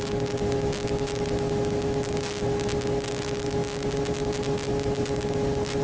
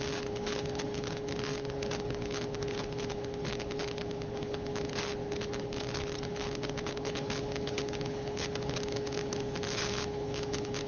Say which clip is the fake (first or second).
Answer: second